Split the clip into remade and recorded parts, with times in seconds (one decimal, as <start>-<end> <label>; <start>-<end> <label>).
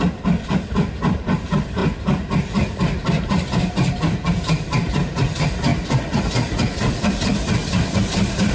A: 0.0-8.5 remade